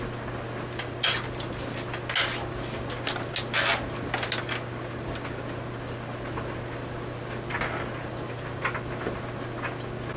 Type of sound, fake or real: real